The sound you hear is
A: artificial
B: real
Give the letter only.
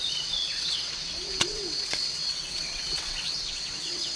A